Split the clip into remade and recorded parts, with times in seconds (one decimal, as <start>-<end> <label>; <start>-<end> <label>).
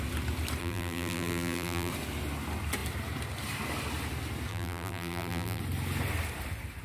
0.0-0.6 recorded; 0.6-1.9 remade; 1.9-4.5 recorded; 4.5-5.6 remade; 5.6-6.8 recorded